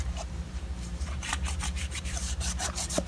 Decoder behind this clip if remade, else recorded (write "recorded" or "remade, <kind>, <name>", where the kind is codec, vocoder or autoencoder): remade, vocoder, BigVGAN v2